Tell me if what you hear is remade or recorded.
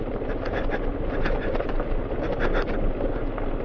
recorded